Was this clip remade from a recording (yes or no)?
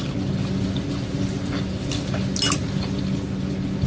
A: no